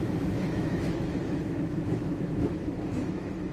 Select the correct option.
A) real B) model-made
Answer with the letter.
B